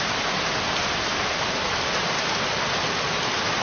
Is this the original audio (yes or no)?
yes